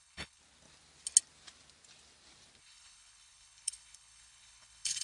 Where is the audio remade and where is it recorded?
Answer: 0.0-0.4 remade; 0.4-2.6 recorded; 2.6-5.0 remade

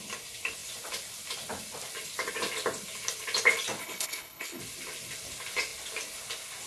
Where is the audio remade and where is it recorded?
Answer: 0.0-3.8 recorded; 3.8-4.6 remade; 4.6-6.7 recorded

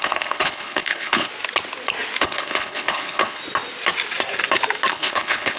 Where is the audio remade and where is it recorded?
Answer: 0.0-1.3 remade; 1.3-2.2 recorded; 2.2-3.4 remade; 3.4-4.9 recorded; 4.9-5.6 remade